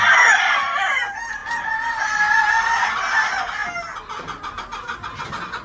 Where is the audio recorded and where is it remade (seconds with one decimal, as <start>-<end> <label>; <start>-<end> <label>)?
0.0-5.6 recorded